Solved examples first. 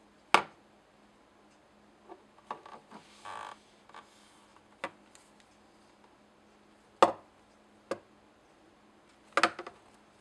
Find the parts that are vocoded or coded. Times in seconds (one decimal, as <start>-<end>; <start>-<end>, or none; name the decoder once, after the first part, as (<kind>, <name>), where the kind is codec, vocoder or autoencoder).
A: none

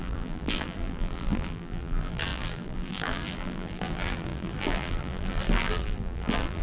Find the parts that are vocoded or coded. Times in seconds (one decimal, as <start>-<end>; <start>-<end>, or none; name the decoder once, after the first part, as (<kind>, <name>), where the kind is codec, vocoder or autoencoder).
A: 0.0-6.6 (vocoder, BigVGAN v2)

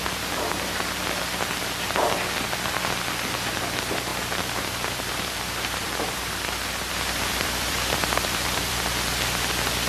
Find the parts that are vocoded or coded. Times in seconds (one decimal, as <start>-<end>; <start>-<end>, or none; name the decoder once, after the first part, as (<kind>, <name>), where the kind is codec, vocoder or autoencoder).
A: 4.1-8.8 (vocoder, BigVGAN v2)

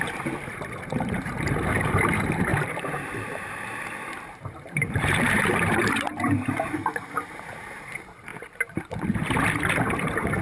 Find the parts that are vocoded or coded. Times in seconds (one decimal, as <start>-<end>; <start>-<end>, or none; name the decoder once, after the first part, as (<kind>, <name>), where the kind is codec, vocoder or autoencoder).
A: 0.0-8.3 (vocoder, BigVGAN v2); 9.7-10.4

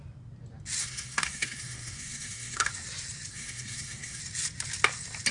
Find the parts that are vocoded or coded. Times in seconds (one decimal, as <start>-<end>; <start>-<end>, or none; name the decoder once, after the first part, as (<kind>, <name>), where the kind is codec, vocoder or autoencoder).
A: 0.8-2.7 (codec, SNAC); 3.3-4.2

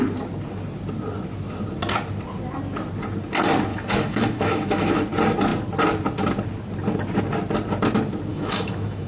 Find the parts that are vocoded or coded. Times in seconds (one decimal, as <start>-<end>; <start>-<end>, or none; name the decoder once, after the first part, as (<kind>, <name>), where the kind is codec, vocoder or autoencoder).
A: 3.7-5.0 (autoencoder, DAC-VAE); 8.3-9.1

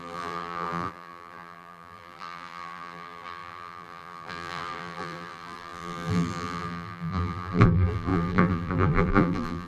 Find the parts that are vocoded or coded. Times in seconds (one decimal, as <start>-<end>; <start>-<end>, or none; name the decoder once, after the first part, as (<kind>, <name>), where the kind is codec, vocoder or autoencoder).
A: 0.0-9.7 (vocoder, BigVGAN v2)